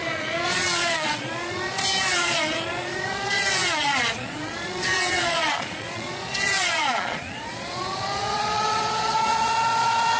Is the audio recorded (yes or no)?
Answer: no